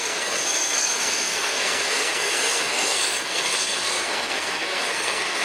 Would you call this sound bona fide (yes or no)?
no